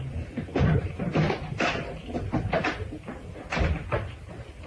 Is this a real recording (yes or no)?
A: yes